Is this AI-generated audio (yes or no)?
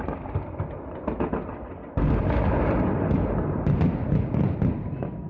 no